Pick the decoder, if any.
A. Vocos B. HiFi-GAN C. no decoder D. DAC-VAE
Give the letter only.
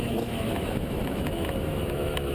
D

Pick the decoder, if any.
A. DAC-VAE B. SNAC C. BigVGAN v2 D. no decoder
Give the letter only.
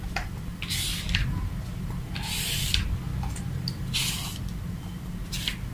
D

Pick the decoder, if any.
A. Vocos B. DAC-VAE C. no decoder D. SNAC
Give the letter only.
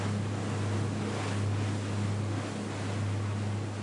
C